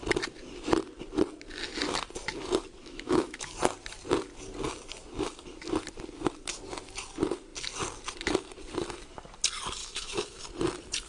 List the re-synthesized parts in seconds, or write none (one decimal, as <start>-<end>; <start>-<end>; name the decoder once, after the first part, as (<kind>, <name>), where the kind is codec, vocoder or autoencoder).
2.8-3.5 (autoencoder, DAC-VAE); 9.8-10.4